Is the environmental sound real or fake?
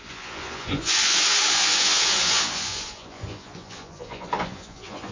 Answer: fake